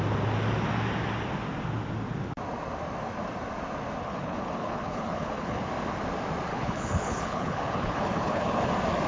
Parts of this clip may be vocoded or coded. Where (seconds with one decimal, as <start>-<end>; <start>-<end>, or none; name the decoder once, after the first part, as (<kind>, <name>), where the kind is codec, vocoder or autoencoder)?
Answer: 4.0-5.6 (codec, HILCodec); 6.5-8.7